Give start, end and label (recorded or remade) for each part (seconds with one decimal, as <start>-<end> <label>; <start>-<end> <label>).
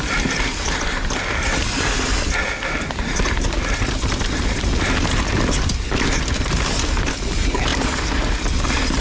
0.0-9.0 recorded